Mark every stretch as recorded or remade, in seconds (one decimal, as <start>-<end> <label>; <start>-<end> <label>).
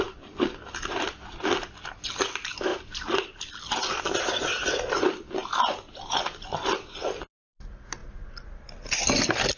0.0-9.6 recorded